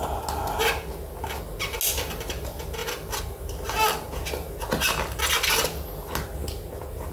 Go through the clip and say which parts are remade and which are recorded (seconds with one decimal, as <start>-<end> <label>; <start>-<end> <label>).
0.0-7.1 recorded